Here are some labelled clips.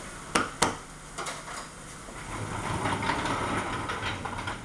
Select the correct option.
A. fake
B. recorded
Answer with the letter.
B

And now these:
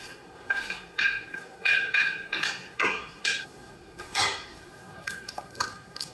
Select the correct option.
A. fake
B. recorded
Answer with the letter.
A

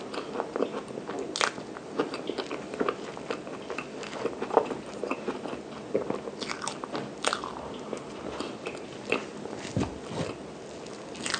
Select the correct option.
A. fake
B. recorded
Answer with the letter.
B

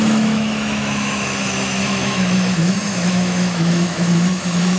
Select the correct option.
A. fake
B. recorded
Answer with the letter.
A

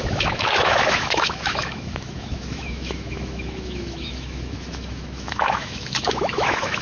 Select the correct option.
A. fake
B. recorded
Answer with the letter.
A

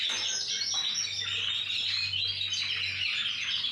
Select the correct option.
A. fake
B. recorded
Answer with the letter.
B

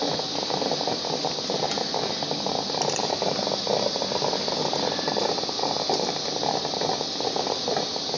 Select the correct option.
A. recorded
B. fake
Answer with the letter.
A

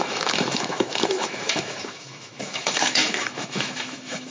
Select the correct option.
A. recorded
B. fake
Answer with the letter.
B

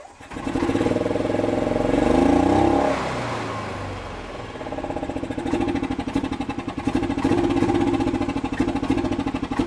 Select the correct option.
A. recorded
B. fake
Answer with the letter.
A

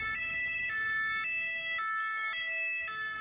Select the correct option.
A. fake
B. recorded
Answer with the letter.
B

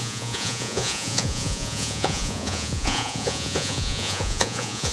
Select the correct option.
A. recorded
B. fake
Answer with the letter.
B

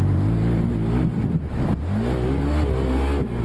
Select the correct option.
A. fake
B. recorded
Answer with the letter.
B